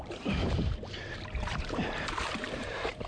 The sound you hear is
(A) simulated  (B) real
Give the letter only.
A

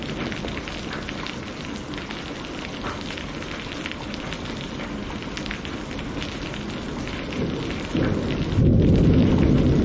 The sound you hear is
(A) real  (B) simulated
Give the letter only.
A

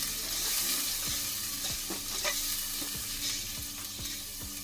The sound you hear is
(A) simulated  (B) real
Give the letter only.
B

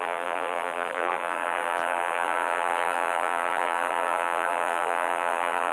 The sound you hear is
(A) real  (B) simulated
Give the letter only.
B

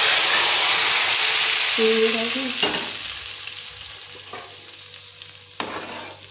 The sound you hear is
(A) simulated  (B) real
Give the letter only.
B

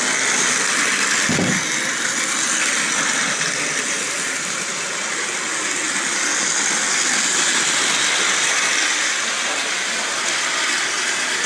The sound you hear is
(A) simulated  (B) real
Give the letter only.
B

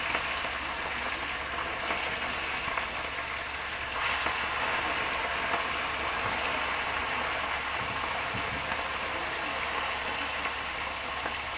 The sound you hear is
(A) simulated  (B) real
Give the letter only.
B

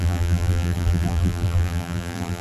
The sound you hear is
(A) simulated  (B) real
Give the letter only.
A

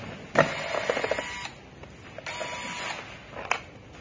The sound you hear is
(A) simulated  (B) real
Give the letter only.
B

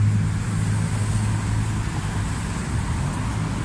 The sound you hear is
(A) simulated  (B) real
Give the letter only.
B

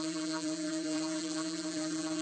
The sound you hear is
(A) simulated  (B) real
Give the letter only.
A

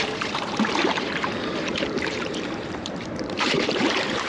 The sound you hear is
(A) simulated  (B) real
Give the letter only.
A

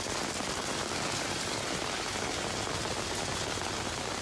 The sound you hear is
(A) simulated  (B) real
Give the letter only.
B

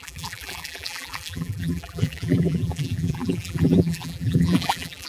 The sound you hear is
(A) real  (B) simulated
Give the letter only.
B